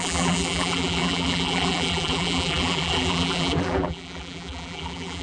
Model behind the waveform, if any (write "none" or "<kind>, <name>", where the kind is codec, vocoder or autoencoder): vocoder, BigVGAN v2